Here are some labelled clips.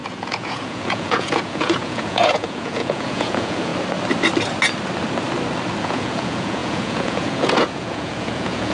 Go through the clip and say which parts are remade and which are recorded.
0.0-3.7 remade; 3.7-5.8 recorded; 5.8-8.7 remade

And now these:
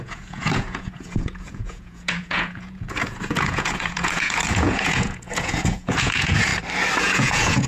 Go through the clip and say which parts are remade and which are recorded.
0.0-6.5 remade; 6.5-7.0 recorded; 7.0-7.7 remade

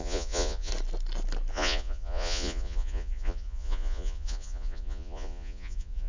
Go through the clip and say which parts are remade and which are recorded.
0.0-0.7 remade; 0.7-1.5 recorded; 1.5-6.1 remade

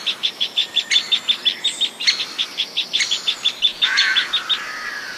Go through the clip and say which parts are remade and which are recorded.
0.0-3.7 recorded; 3.7-4.3 remade; 4.3-5.2 recorded

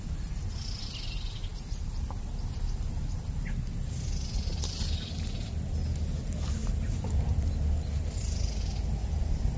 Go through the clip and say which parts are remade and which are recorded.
0.0-9.6 recorded

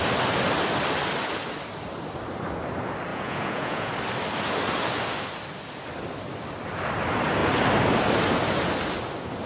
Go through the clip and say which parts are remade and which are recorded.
0.0-3.1 recorded; 3.1-3.9 remade; 3.9-9.5 recorded

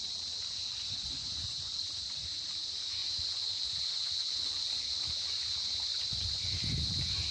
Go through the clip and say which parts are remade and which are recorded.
0.0-0.7 recorded; 0.7-2.4 remade; 2.4-3.0 recorded; 3.0-5.0 remade; 5.0-5.9 recorded; 5.9-6.6 remade; 6.6-7.3 recorded

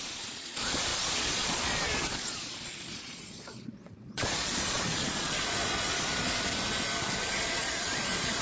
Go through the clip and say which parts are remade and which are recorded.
0.0-6.5 remade; 6.5-7.3 recorded; 7.3-8.4 remade